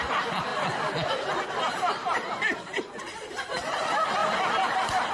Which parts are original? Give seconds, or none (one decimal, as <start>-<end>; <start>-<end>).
0.5-1.6; 4.2-5.1

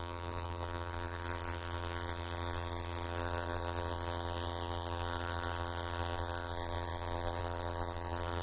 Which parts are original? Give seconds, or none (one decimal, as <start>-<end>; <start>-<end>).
none

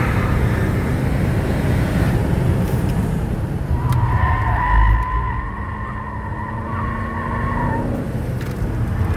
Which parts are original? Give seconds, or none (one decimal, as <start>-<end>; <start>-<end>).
0.0-9.2

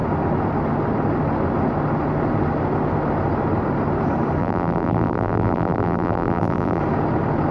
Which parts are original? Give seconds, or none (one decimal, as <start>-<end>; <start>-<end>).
0.0-4.4; 6.8-7.5

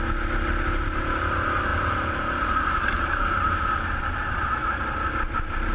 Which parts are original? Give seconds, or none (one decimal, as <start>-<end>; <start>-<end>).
0.0-5.7

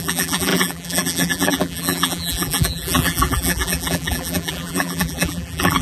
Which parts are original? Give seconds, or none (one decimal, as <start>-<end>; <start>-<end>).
none